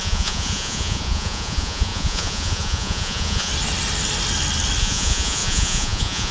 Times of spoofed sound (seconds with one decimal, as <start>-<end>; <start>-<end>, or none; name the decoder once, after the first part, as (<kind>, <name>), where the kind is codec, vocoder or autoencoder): 0.0-3.5 (vocoder, Vocos); 4.8-6.3